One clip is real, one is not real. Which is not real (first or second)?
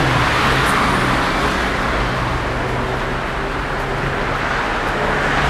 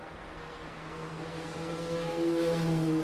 second